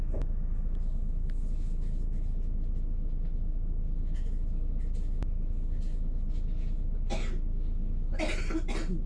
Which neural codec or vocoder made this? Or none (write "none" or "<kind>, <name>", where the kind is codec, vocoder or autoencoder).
none